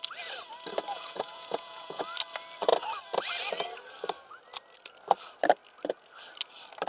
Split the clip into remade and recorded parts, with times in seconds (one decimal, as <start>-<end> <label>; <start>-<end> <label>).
0.0-0.9 recorded; 0.9-2.0 remade; 2.0-6.9 recorded